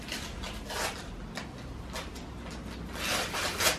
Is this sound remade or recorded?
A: recorded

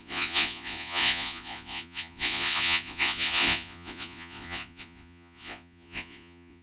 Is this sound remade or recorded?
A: remade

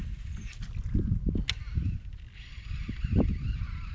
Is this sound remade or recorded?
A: recorded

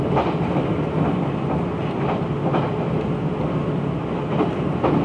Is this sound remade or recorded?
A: recorded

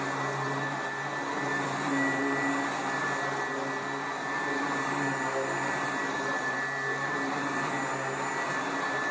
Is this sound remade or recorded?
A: recorded